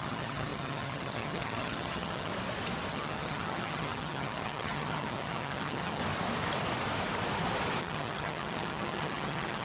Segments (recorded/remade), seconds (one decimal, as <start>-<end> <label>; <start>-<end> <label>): 0.0-2.3 remade; 2.3-2.9 recorded; 2.9-6.0 remade; 6.0-7.8 recorded; 7.8-9.6 remade